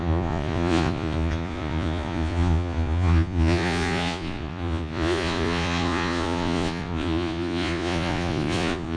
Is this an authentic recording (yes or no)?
no